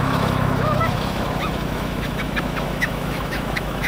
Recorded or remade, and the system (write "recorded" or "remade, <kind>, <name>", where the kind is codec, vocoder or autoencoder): remade, autoencoder, DAC-VAE